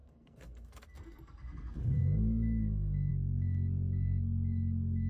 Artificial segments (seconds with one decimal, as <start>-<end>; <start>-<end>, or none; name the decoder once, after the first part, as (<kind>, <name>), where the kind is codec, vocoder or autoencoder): 0.0-5.1 (codec, SNAC)